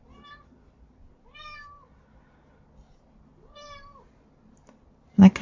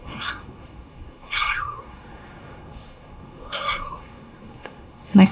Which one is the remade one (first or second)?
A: second